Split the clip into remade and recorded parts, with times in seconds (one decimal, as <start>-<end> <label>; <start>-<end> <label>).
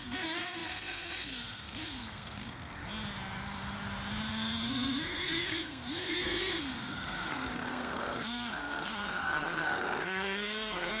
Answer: 0.0-2.8 remade; 2.8-4.3 recorded; 4.3-11.0 remade